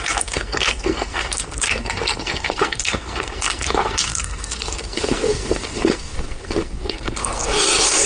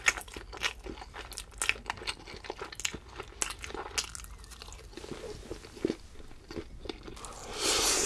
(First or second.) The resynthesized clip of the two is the first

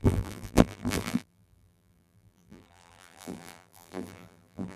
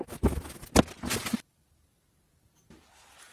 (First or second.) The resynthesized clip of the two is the first